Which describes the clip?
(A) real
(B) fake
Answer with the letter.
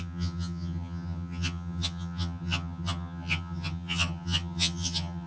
B